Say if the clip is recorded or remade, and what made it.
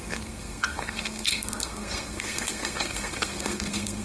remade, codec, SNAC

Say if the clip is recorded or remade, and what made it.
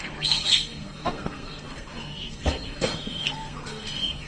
remade, codec, SNAC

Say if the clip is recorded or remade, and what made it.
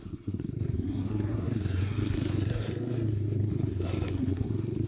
remade, codec, SNAC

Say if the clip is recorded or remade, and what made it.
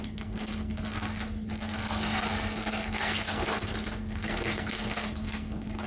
remade, codec, SNAC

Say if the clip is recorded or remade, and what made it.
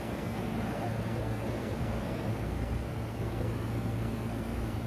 remade, codec, SNAC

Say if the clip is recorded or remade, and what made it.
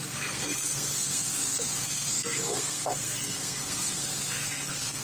remade, codec, SNAC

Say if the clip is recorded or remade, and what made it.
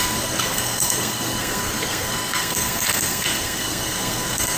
remade, codec, SNAC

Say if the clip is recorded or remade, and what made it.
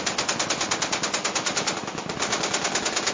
recorded